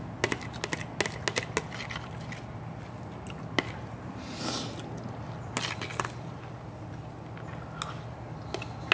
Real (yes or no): yes